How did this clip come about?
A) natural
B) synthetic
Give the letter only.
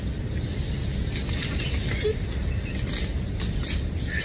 A